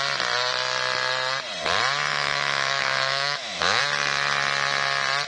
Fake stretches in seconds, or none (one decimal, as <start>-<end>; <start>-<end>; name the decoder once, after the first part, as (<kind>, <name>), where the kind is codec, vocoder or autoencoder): 2.1-3.8 (autoencoder, DAC-VAE)